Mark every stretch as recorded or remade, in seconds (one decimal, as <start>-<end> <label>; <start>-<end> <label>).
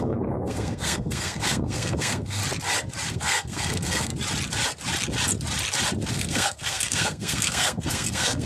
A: 0.0-2.4 remade; 2.4-3.1 recorded; 3.1-4.1 remade; 4.1-6.1 recorded; 6.1-8.5 remade